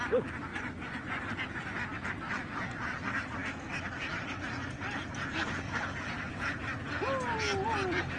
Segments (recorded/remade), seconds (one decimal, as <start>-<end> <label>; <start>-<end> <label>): 0.0-0.5 recorded; 0.5-1.2 remade; 1.2-8.2 recorded